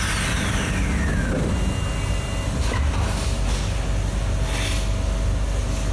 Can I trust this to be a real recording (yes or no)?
yes